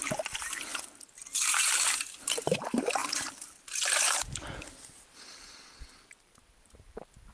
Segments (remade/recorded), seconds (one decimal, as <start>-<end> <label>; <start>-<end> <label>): 0.0-7.3 recorded